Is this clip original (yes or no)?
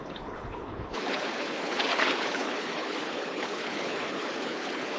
no